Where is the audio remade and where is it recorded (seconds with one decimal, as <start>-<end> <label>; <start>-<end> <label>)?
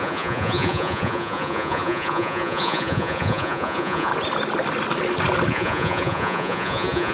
0.0-4.1 remade; 4.1-5.5 recorded; 5.5-7.1 remade